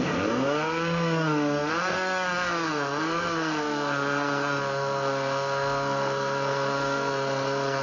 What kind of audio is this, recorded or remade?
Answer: remade